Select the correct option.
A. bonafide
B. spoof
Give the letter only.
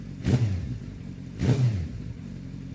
B